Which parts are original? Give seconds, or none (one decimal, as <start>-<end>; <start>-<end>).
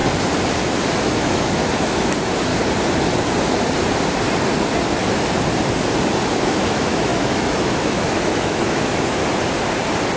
0.0-1.2; 2.5-6.2; 9.2-10.2